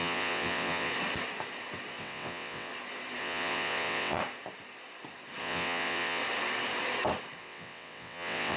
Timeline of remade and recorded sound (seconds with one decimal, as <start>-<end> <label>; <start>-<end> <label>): 0.0-0.9 remade; 0.9-2.0 recorded; 2.0-2.7 remade; 2.7-3.2 recorded; 3.2-4.2 remade; 4.2-5.4 recorded; 5.4-6.2 remade; 6.2-7.4 recorded; 7.4-8.6 remade